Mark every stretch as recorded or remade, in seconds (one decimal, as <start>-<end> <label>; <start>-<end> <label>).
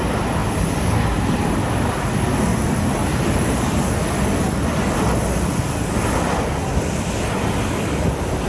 0.0-0.4 recorded; 0.4-1.5 remade; 1.5-2.5 recorded; 2.5-3.9 remade; 3.9-8.5 recorded